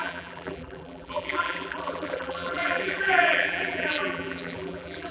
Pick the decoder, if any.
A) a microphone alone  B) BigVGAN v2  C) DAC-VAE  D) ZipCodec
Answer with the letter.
B